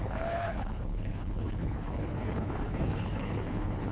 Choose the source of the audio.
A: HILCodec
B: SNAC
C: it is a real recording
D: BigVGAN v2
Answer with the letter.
A